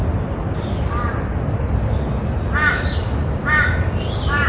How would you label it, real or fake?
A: real